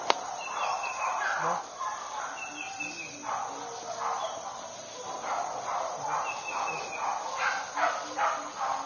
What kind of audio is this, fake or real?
fake